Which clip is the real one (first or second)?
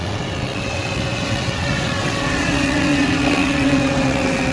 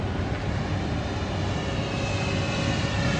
second